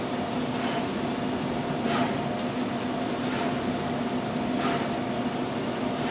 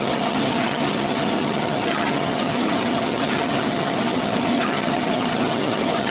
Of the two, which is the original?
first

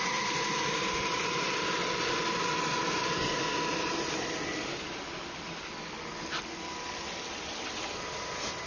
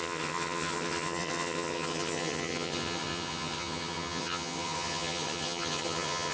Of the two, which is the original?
first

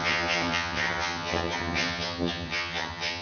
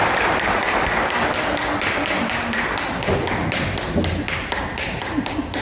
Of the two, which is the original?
second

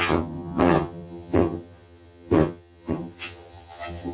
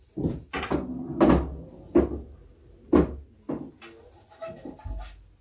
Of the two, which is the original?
second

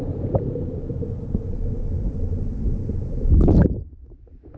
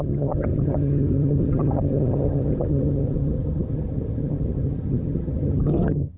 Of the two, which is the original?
first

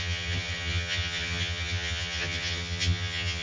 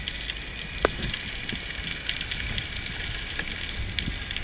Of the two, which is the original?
second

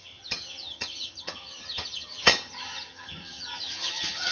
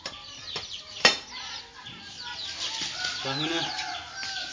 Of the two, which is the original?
second